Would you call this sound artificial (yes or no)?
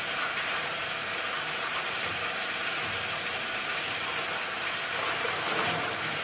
yes